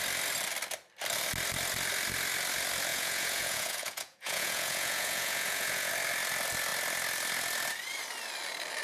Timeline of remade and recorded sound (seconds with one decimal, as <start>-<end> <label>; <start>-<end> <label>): 0.0-2.9 recorded; 2.9-5.9 remade; 5.9-8.8 recorded